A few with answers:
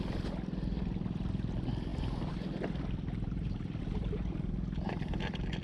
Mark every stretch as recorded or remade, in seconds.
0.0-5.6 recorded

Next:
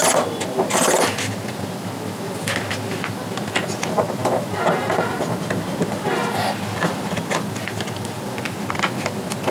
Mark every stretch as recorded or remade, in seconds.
0.0-9.5 recorded

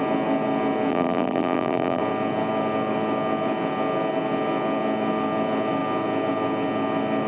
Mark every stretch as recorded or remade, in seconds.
0.0-0.9 recorded; 0.9-2.0 remade; 2.0-7.3 recorded

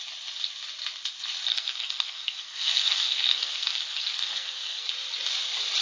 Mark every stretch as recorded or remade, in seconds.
0.0-1.5 recorded; 1.5-4.9 remade; 4.9-5.8 recorded

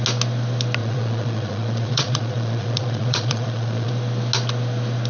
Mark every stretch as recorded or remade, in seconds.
0.0-0.8 recorded; 0.8-3.9 remade; 3.9-5.1 recorded

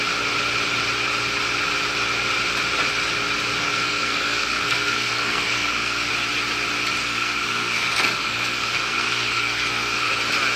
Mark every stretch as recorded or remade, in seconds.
0.0-3.6 recorded; 3.6-6.1 remade; 6.1-7.0 recorded; 7.0-10.1 remade; 10.1-10.6 recorded